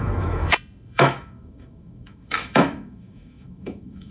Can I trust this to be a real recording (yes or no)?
no